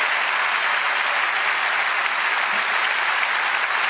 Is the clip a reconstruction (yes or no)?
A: no